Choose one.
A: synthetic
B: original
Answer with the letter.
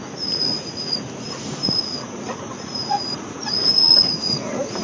A